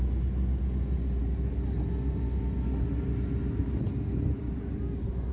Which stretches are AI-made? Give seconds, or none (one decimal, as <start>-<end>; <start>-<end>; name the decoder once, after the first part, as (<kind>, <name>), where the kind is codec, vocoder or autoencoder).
none